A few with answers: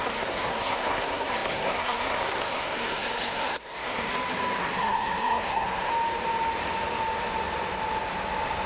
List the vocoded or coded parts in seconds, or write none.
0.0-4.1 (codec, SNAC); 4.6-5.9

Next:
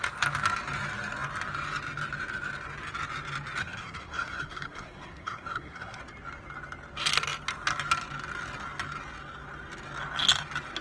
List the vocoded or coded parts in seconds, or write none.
3.6-6.0 (codec, SNAC)

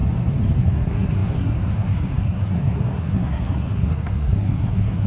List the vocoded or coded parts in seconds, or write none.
0.6-5.1 (codec, SNAC)